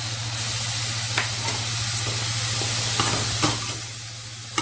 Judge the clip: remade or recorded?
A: recorded